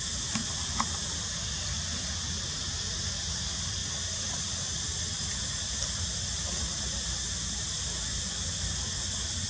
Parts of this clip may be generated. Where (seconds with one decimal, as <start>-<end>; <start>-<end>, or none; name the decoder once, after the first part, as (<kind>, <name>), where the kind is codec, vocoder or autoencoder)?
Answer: none